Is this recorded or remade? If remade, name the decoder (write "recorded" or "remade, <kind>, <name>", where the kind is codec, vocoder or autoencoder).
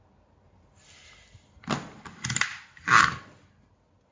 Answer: recorded